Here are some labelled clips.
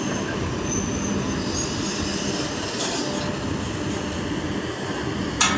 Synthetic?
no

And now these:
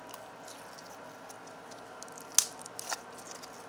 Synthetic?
no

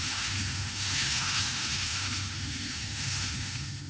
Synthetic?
yes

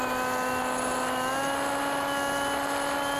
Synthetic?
no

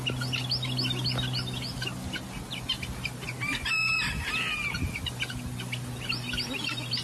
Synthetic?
no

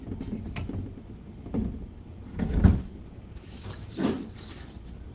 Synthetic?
no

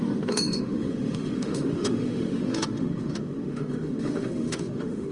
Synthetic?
yes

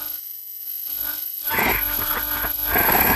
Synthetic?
yes